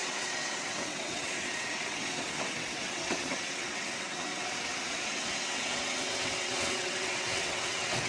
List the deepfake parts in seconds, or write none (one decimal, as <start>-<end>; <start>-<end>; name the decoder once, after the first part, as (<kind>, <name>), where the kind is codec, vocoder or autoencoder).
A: 0.0-8.1 (vocoder, WaveNeXt)